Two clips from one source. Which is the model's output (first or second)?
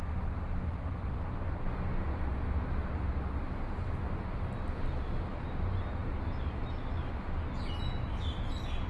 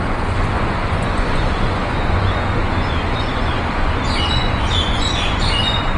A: second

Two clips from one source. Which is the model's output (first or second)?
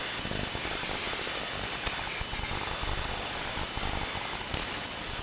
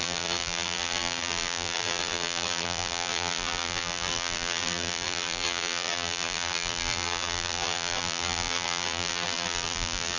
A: second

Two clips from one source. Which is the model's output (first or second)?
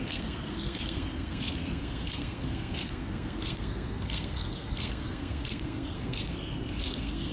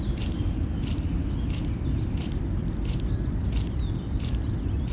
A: first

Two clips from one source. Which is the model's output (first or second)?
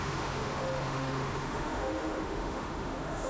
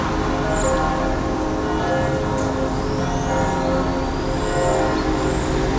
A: first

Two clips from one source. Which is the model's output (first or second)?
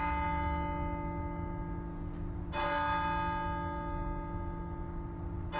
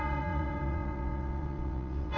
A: second